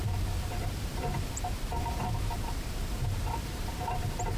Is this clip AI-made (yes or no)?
yes